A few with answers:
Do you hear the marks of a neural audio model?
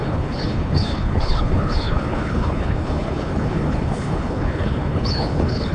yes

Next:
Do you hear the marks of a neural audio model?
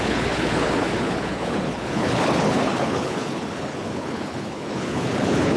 yes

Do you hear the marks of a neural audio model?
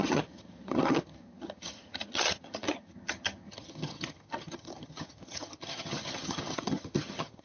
yes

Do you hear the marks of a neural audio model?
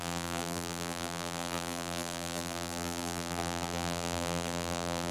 yes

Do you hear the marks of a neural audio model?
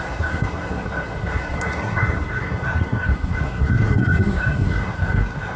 yes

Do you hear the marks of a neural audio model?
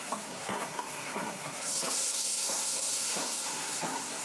yes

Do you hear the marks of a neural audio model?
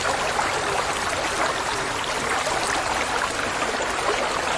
no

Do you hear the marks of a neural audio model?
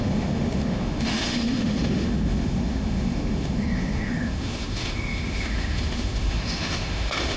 yes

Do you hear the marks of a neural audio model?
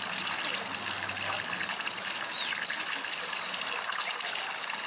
no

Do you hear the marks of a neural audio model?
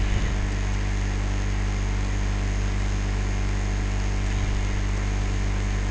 no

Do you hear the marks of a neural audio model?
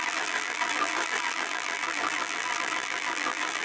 yes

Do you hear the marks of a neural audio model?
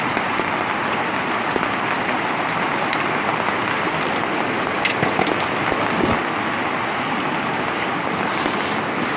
no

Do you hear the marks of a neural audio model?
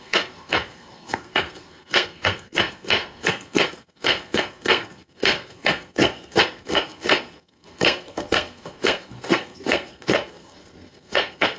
yes